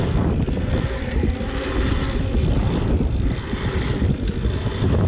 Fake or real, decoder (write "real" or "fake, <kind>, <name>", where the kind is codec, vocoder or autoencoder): real